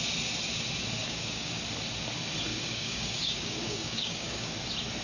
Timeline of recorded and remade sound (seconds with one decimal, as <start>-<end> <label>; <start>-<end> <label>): 0.0-1.0 recorded; 1.0-1.5 remade; 1.5-2.5 recorded; 2.5-4.5 remade; 4.5-5.0 recorded